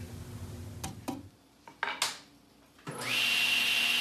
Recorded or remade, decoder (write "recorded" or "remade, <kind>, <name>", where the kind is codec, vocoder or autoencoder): recorded